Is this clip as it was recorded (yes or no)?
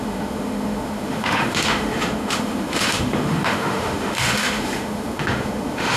no